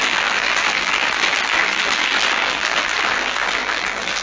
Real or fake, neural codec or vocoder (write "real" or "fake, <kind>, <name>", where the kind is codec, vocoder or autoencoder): fake, vocoder, BigVGAN v2